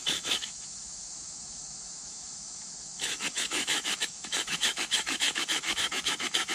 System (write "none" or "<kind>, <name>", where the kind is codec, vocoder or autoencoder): autoencoder, DAC-VAE